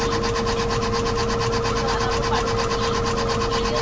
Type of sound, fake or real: real